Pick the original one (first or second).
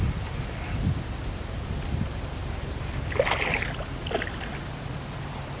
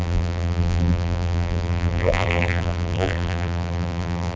first